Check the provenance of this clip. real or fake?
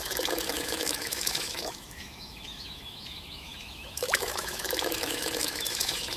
fake